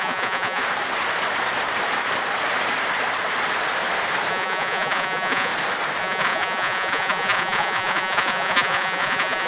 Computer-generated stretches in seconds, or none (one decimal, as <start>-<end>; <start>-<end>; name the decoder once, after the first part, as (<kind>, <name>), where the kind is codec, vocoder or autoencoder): 0.0-0.6 (vocoder, Vocos); 4.3-5.5; 6.0-9.5